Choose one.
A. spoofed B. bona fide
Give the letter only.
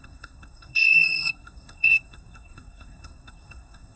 A